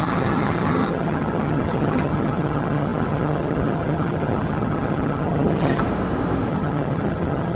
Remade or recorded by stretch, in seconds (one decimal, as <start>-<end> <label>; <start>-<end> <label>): 0.0-5.8 remade; 5.8-6.5 recorded; 6.5-7.5 remade